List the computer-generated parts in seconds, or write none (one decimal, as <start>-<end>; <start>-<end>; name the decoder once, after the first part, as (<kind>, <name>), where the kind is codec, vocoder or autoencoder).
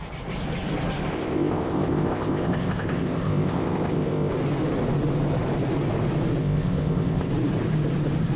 1.1-4.3 (codec, ZipCodec); 6.4-7.3